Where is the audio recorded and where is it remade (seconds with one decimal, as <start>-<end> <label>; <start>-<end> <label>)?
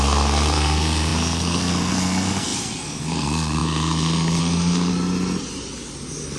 0.0-4.9 remade; 4.9-6.4 recorded